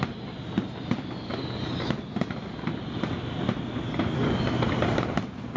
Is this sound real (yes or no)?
yes